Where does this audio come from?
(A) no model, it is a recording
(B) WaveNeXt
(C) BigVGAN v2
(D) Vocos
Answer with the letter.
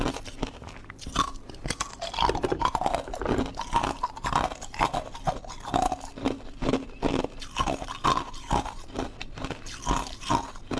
A